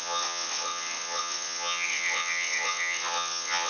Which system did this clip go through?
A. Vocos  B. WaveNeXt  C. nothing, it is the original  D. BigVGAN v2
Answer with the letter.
B